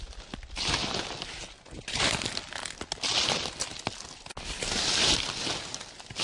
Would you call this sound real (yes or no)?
yes